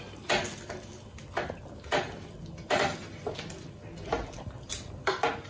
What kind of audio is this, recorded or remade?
recorded